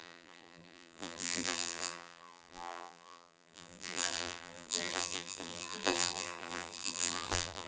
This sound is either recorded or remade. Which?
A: remade